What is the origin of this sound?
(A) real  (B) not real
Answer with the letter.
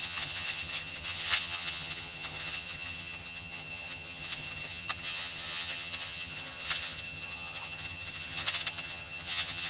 B